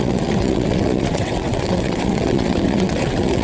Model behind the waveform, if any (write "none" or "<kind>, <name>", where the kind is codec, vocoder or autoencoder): vocoder, WaveNeXt